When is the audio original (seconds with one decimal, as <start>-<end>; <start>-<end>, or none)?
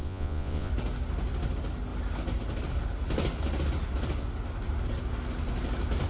0.7-6.1